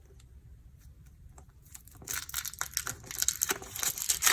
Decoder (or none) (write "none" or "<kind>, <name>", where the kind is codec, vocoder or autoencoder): none